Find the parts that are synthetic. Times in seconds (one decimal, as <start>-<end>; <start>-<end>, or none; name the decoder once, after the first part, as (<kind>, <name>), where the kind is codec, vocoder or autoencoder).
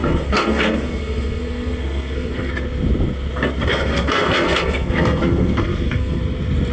0.0-2.5 (codec, SNAC); 3.7-6.2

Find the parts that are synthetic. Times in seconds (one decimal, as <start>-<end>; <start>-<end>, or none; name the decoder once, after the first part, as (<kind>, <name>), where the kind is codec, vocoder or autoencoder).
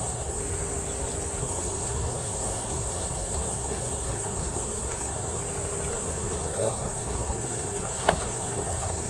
0.0-0.4 (codec, SNAC); 1.4-5.4; 5.9-9.1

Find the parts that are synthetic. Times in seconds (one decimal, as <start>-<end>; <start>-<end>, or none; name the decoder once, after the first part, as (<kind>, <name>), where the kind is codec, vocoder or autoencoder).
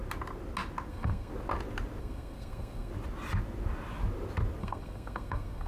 0.9-1.3 (codec, SNAC); 2.0-2.9; 4.6-5.7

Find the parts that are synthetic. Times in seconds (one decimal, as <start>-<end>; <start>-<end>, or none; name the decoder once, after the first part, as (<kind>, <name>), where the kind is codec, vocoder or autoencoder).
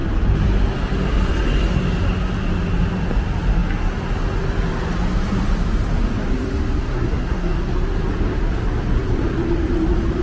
6.8-7.6 (codec, SNAC)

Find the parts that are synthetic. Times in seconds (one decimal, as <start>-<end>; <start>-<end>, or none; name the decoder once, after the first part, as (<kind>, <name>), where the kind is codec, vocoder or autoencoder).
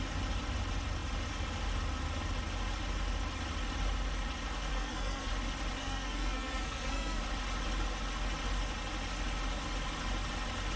4.7-5.3 (codec, SNAC); 5.8-7.2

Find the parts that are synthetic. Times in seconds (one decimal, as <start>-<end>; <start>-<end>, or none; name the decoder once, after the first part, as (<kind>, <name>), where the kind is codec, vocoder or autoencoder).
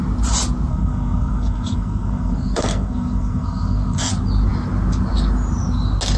0.7-4.1 (codec, SNAC)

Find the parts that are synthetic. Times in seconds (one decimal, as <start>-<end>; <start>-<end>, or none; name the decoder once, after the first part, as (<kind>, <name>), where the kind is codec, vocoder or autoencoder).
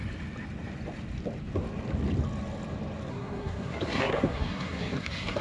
3.1-5.4 (codec, SNAC)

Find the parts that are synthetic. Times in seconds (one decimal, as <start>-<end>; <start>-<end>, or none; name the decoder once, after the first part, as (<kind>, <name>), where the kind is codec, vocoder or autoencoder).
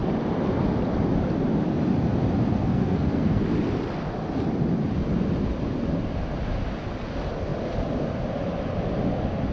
2.6-3.4 (codec, SNAC)